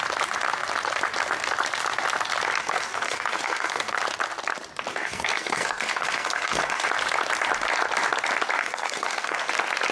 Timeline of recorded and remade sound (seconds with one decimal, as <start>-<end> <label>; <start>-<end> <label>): 0.0-2.6 recorded; 2.6-4.0 remade; 4.0-4.9 recorded; 4.9-6.9 remade; 6.9-8.6 recorded; 8.6-9.5 remade; 9.5-9.9 recorded